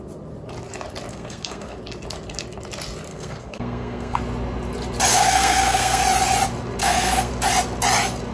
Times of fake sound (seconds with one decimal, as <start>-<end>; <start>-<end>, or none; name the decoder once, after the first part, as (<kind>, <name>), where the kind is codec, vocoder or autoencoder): 1.1-1.8 (codec, SNAC); 3.1-4.2; 5.1-6.0; 6.8-7.3